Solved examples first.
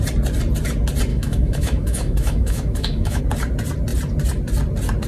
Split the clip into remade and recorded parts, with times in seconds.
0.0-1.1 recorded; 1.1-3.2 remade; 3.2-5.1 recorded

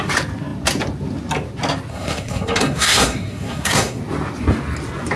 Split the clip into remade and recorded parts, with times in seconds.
0.0-1.9 recorded; 1.9-4.0 remade; 4.0-5.2 recorded

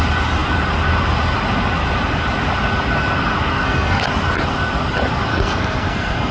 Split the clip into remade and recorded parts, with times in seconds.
0.0-3.5 recorded; 3.5-4.0 remade; 4.0-5.3 recorded; 5.3-6.3 remade

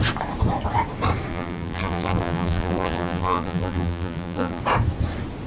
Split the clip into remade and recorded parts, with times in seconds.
0.0-1.3 recorded; 1.3-4.6 remade; 4.6-5.5 recorded

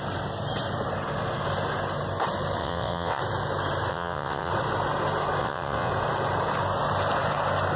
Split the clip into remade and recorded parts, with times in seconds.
0.0-2.6 recorded; 2.6-3.2 remade; 3.2-3.9 recorded; 3.9-4.5 remade; 4.5-5.4 recorded; 5.4-5.9 remade; 5.9-7.8 recorded